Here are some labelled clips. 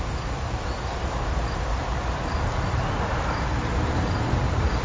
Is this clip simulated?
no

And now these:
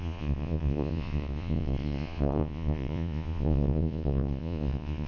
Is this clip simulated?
yes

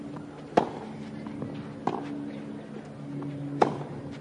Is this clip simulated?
no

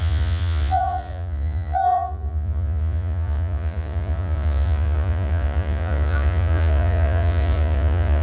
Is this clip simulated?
yes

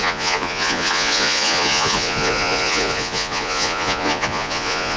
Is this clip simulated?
yes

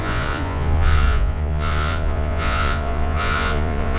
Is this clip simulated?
yes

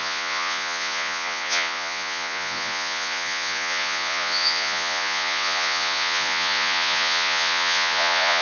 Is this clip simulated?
yes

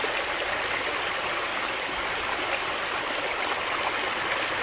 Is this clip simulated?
no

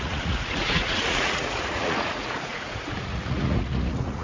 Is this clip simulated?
yes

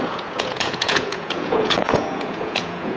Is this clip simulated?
yes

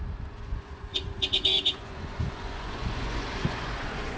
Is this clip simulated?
yes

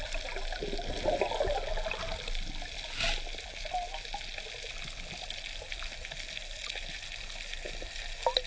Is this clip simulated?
no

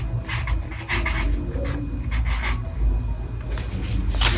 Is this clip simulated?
no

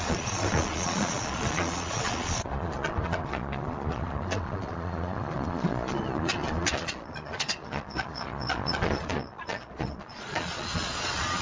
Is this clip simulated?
yes